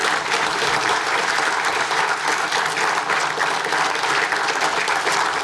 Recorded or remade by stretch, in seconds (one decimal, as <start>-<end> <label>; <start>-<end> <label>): 0.0-2.6 remade; 2.6-5.4 recorded